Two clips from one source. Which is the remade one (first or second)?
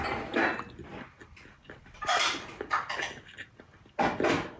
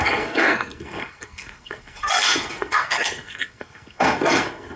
second